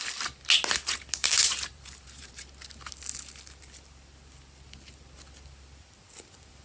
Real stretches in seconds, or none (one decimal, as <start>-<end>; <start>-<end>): 0.0-1.2; 2.4-6.6

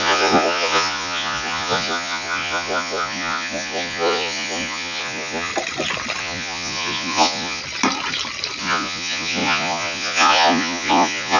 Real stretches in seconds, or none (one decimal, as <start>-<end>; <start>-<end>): 5.5-6.2; 7.6-8.6

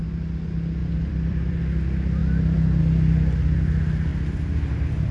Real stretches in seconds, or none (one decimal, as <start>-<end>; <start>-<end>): 0.0-0.8; 1.6-4.1

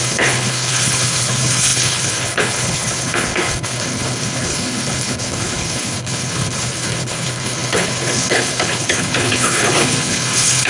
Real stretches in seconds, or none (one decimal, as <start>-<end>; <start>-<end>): none

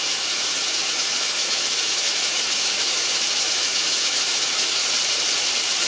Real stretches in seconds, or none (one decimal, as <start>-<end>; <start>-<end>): 4.8-5.9

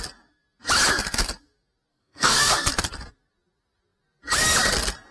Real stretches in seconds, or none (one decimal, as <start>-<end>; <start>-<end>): 0.0-1.9; 2.7-5.1